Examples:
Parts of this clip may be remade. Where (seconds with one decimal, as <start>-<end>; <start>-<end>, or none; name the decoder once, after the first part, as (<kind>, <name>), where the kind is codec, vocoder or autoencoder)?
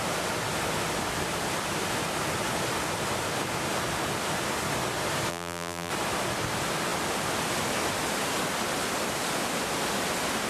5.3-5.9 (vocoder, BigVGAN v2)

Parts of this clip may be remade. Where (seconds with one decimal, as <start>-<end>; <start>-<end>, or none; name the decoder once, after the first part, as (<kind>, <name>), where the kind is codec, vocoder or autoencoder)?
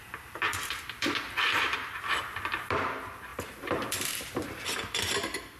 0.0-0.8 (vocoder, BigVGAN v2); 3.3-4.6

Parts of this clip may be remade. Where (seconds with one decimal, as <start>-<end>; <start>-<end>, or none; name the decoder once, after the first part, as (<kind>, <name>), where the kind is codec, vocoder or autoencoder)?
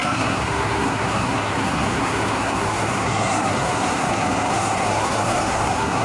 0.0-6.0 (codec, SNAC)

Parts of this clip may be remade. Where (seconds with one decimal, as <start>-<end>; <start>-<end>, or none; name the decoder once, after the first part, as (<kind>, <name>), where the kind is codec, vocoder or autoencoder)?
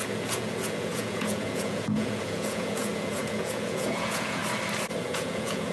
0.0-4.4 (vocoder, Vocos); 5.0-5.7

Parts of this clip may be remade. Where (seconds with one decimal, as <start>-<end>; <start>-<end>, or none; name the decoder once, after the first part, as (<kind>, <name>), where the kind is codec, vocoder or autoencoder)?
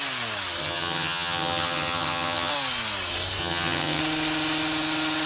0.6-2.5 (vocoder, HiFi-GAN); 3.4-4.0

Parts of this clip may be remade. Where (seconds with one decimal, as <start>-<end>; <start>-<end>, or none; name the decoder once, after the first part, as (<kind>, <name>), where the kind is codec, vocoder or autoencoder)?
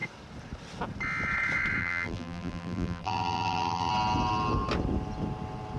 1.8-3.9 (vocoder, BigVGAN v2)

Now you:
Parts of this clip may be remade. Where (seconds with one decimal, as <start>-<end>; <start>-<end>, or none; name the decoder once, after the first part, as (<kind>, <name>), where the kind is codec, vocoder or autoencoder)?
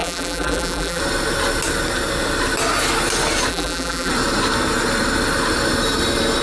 0.0-1.0 (vocoder, BigVGAN v2); 3.5-4.1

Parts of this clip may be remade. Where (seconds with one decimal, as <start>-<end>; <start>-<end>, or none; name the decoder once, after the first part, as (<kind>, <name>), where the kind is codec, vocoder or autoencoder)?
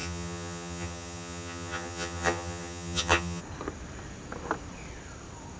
0.0-3.4 (vocoder, HiFi-GAN)